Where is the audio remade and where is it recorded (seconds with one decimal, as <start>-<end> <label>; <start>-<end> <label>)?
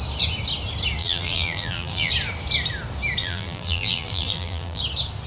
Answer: 0.0-1.0 recorded; 1.0-2.1 remade; 2.1-3.2 recorded; 3.2-4.8 remade; 4.8-5.3 recorded